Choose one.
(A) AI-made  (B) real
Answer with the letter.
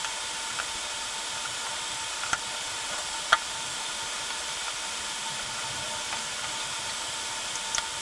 B